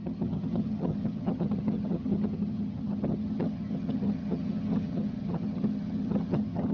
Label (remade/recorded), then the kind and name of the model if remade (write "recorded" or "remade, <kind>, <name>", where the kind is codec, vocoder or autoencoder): remade, vocoder, HiFi-GAN